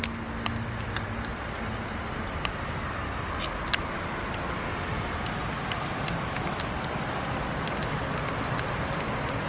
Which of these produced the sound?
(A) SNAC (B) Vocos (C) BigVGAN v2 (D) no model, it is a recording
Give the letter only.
D